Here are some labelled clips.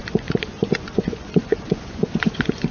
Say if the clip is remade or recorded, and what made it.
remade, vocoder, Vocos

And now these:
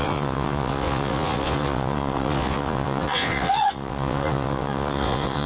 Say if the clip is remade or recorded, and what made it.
remade, vocoder, WaveNeXt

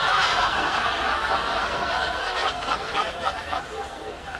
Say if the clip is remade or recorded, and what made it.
remade, codec, SNAC